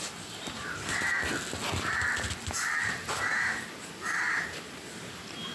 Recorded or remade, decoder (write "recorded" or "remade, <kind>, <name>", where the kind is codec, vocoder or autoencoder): recorded